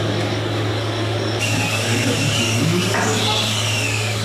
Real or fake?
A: fake